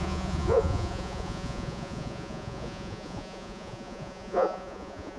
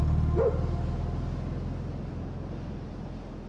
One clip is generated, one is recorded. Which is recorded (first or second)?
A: second